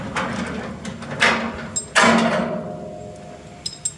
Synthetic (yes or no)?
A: no